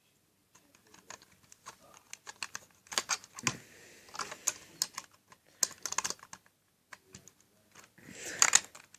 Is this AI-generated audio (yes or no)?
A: no